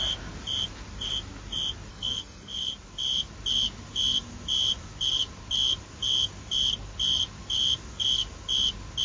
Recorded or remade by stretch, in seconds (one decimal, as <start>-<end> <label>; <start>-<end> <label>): 0.0-1.9 recorded; 1.9-2.5 remade; 2.5-9.0 recorded